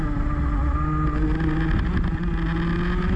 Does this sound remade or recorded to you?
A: recorded